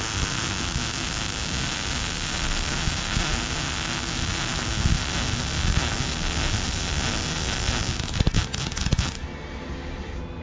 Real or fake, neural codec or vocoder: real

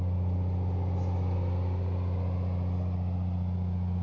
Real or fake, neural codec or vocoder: real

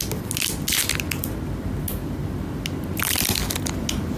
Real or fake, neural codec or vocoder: real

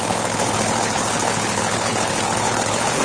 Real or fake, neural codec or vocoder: fake, codec, HILCodec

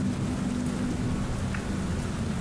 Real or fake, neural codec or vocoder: real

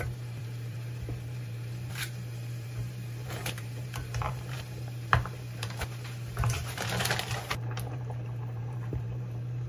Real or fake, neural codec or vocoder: fake, vocoder, BigVGAN v2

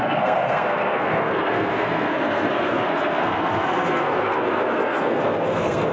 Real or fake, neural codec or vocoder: fake, codec, SNAC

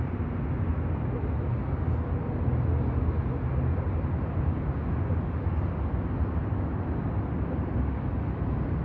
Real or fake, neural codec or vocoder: real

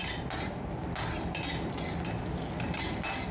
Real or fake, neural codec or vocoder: real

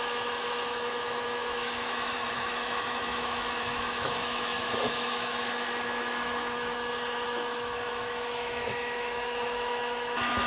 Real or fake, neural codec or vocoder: fake, autoencoder, DAC-VAE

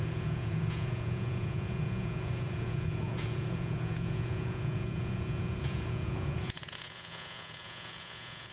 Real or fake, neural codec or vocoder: fake, vocoder, Vocos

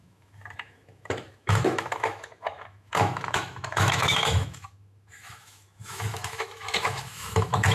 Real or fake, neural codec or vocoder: fake, autoencoder, DAC-VAE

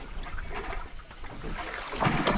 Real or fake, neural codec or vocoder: real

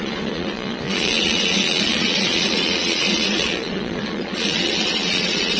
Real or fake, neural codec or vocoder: fake, vocoder, Vocos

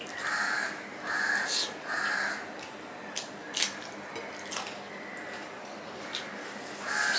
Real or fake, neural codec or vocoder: real